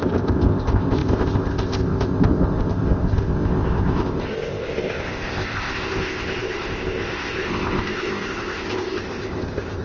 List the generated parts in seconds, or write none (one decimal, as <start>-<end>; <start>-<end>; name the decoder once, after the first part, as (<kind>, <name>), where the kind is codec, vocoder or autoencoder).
0.0-9.8 (codec, ZipCodec)